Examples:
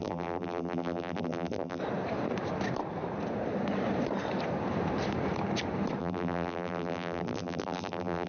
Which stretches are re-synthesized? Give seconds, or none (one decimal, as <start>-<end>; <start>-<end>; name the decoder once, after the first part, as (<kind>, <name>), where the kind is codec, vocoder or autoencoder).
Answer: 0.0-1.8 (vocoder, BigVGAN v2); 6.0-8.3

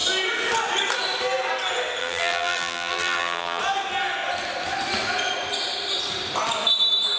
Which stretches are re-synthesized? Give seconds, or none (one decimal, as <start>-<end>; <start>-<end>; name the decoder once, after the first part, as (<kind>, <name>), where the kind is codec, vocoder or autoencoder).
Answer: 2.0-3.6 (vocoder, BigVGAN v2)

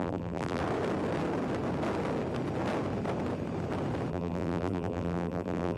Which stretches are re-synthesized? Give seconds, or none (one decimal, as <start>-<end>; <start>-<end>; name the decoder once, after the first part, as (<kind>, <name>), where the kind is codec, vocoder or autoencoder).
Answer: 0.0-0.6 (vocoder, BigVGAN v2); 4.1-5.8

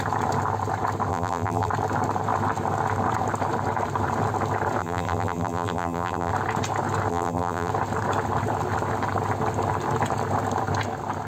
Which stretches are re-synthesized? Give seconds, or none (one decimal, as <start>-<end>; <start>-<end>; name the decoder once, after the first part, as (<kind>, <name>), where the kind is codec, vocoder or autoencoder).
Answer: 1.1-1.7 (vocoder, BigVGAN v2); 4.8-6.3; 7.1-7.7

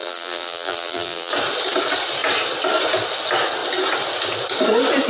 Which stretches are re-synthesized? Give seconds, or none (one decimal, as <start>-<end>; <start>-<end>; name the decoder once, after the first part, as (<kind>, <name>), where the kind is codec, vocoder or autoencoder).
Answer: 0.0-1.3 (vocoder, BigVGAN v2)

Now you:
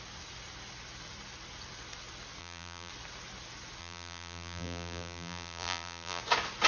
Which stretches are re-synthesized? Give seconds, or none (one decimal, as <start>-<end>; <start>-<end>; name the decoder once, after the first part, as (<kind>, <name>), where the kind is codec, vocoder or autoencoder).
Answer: 2.4-2.9 (vocoder, BigVGAN v2); 3.8-6.2

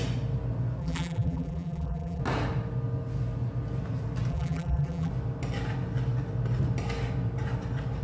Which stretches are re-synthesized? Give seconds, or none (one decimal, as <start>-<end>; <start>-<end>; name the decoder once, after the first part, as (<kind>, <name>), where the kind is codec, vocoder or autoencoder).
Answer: 0.8-2.2 (vocoder, BigVGAN v2); 4.3-5.1

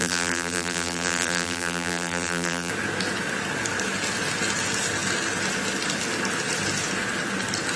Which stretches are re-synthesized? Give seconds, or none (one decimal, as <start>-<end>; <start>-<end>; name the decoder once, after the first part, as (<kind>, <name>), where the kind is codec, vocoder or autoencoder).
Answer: 0.0-2.7 (vocoder, BigVGAN v2)